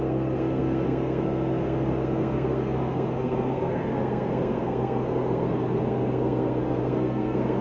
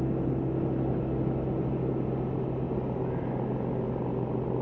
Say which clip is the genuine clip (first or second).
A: second